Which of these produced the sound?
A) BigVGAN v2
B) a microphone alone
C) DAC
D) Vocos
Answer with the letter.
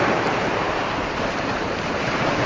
A